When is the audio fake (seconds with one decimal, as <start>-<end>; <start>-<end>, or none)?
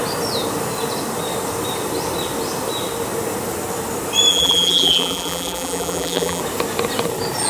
4.3-6.4